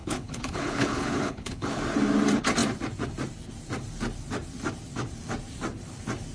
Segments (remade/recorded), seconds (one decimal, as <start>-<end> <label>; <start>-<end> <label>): 0.0-1.8 remade; 1.8-6.3 recorded